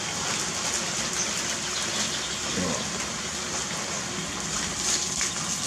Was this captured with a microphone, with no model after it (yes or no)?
yes